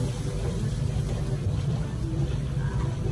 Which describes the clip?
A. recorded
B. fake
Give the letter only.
A